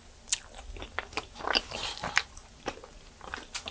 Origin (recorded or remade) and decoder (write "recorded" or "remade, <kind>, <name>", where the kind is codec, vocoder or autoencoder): recorded